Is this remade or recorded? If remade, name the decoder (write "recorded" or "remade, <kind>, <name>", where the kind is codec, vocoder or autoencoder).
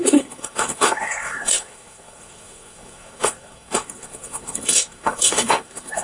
remade, codec, SNAC